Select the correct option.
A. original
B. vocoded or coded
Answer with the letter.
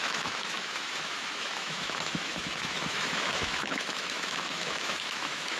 B